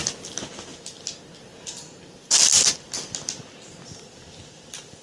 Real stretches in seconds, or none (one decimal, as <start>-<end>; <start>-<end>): 0.0-5.0

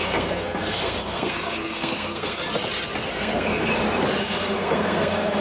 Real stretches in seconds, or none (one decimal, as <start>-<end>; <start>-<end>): 2.4-3.1; 3.7-4.2

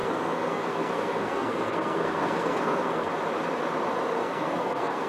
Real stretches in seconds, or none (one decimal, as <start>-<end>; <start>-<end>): 3.1-4.2

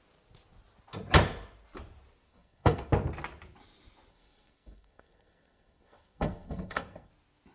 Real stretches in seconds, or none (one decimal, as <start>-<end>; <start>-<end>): 0.0-2.3; 2.9-4.1; 7.1-7.5